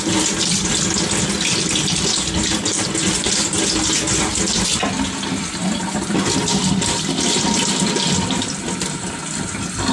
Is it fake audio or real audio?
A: real